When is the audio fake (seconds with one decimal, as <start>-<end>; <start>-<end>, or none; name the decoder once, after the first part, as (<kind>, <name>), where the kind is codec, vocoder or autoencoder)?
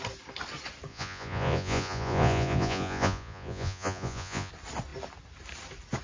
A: 0.9-4.5 (vocoder, Vocos)